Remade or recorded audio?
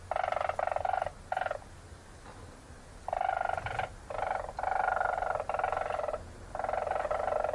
recorded